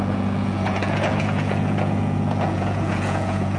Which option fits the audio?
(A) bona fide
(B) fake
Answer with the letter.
B